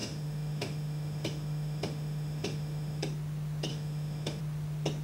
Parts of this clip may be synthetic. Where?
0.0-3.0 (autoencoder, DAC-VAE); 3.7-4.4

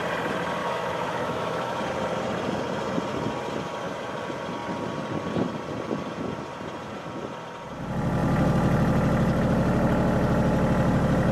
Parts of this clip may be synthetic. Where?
0.6-1.8 (autoencoder, DAC-VAE)

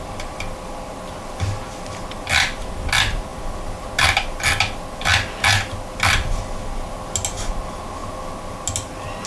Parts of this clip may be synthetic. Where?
none